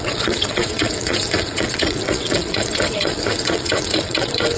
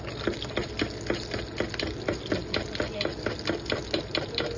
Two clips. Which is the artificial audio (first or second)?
first